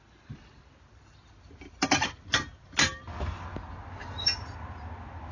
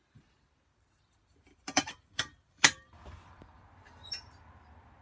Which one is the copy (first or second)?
second